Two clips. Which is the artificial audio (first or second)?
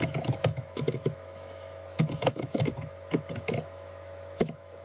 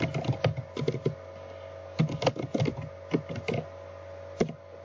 first